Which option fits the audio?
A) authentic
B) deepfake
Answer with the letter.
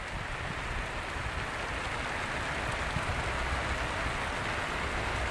A